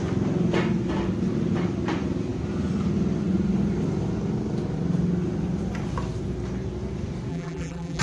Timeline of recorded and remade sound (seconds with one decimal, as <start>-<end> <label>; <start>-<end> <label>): 0.0-7.3 recorded; 7.3-8.0 remade